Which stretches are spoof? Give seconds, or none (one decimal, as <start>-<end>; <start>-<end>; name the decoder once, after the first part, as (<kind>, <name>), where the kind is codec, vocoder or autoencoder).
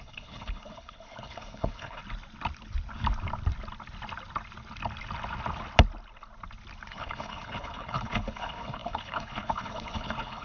0.0-2.0 (codec, HILCodec); 6.9-10.4